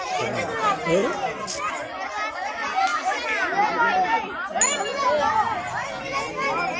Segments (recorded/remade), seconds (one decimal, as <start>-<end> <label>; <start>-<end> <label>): 0.0-6.8 recorded